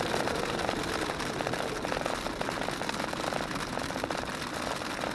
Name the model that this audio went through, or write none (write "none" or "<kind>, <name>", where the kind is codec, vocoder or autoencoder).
none